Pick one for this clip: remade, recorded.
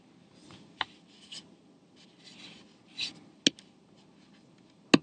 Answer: recorded